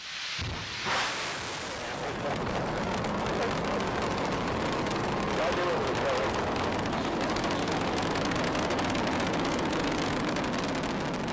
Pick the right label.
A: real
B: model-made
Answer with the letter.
A